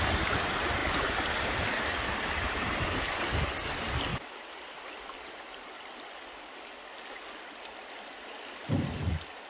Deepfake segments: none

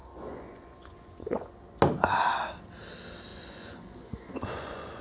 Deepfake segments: 0.0-1.5 (vocoder, Vocos); 3.3-5.0

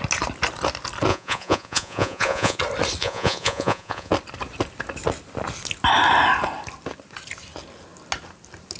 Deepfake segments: 1.1-2.6 (vocoder, Vocos); 3.0-4.1

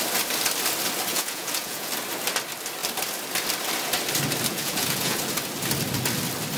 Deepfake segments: 1.1-1.9 (vocoder, Vocos); 4.5-5.2